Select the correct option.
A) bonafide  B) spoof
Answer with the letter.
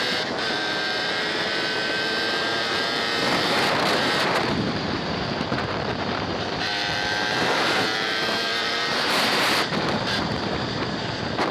B